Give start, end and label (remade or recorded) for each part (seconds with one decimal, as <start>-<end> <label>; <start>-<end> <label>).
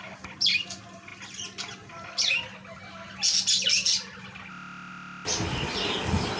0.0-6.4 recorded